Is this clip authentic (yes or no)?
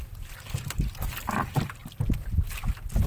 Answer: yes